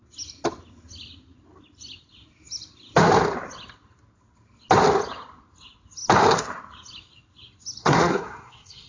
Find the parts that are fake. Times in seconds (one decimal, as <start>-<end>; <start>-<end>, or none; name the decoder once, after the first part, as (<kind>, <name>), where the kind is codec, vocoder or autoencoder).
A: 7.8-8.9 (codec, SNAC)

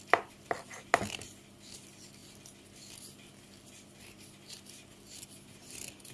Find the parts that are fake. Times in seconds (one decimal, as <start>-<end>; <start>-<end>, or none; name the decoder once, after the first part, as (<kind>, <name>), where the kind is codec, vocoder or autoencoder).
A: none

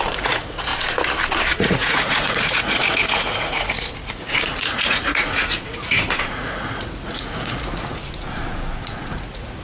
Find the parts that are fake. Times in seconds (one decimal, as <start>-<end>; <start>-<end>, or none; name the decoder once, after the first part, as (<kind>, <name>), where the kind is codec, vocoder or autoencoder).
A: 0.0-0.7 (vocoder, Vocos); 1.5-9.6